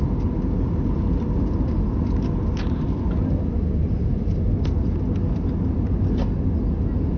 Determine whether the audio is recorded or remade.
recorded